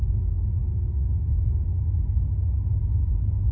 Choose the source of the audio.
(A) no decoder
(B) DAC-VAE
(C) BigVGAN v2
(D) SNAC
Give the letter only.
A